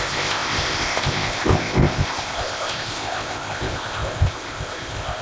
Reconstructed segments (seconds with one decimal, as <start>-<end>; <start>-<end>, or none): 0.0-5.2